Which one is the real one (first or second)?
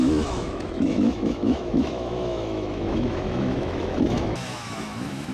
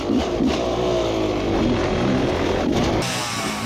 second